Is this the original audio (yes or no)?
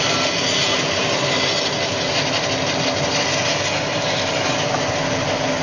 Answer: yes